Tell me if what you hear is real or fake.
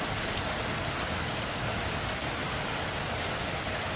real